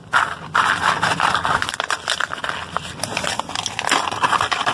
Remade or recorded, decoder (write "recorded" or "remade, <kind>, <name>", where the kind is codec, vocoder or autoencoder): recorded